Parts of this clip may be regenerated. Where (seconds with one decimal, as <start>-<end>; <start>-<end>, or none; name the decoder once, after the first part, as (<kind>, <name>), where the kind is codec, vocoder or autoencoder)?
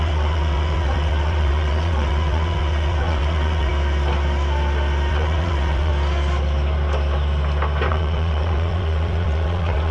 0.0-3.7 (vocoder, WaveNeXt); 5.1-5.9; 7.9-9.9